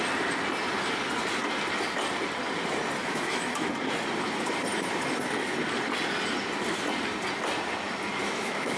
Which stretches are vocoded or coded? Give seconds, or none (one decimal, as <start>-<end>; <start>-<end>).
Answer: 3.0-3.7; 8.2-8.8